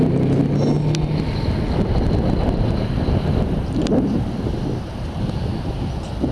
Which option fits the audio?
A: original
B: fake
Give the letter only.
A